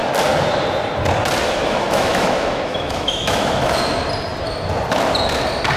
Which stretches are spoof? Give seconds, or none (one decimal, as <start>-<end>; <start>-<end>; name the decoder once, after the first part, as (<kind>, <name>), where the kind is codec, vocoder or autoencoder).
1.6-3.7 (autoencoder, DAC-VAE)